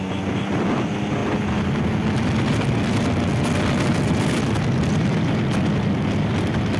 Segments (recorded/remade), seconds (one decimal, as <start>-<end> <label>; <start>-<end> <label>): 0.0-6.8 recorded